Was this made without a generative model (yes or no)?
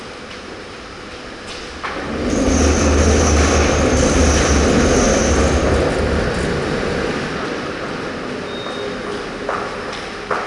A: yes